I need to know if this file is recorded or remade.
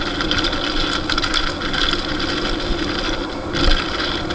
recorded